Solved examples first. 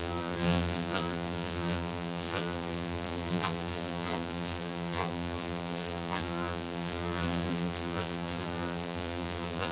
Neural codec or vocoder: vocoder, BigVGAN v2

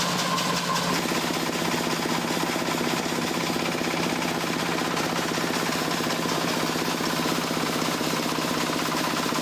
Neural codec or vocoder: none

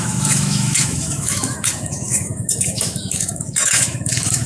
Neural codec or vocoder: autoencoder, DAC-VAE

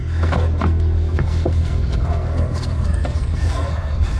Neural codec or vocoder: codec, SNAC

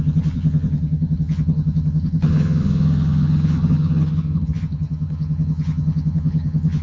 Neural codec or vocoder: vocoder, HiFi-GAN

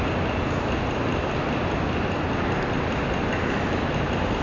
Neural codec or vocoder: none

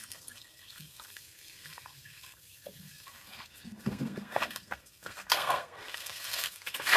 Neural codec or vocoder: codec, SNAC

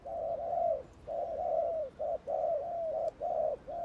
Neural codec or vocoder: none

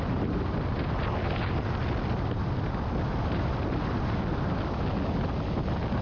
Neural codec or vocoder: none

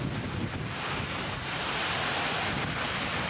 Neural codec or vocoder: none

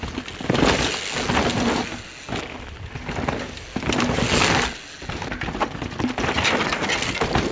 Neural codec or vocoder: none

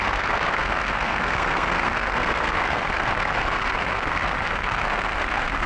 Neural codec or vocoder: codec, SNAC